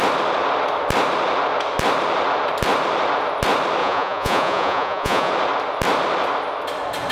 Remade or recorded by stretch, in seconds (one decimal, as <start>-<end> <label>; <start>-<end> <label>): 0.0-3.8 recorded; 3.8-5.3 remade; 5.3-7.1 recorded